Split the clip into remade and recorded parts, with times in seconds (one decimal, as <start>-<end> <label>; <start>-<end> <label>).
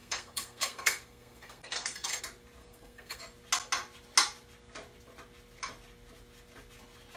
0.0-2.2 remade; 2.2-2.6 recorded; 2.6-3.2 remade; 3.2-7.2 recorded